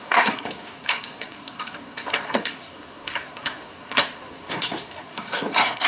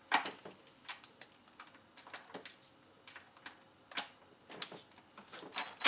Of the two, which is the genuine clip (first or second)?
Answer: second